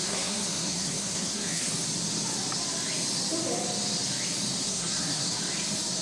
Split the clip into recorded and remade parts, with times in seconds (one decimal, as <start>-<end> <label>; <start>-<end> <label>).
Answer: 0.0-1.7 remade; 1.7-4.6 recorded; 4.6-5.4 remade; 5.4-6.0 recorded